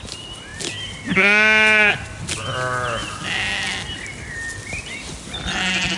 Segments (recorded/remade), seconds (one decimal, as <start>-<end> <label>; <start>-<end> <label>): 0.0-6.0 recorded